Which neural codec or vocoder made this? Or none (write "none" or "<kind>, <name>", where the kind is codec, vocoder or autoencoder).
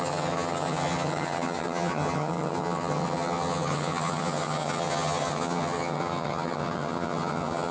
vocoder, HiFi-GAN